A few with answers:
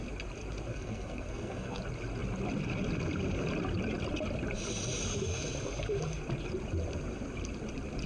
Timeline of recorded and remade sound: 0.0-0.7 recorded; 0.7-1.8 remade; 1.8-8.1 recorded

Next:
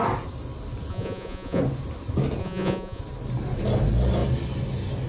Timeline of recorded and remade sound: 0.0-0.9 recorded; 0.9-1.6 remade; 1.6-2.4 recorded; 2.4-3.0 remade; 3.0-5.1 recorded

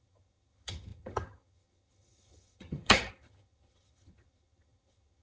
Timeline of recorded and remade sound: 0.0-5.2 remade

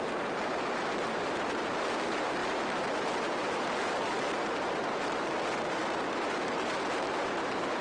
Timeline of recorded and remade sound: 0.0-7.8 remade